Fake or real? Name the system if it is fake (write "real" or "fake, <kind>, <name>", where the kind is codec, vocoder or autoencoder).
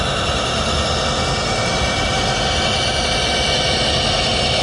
real